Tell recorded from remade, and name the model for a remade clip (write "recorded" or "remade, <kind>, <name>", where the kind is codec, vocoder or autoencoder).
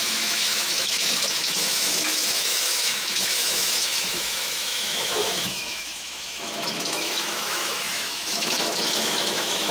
remade, autoencoder, DAC-VAE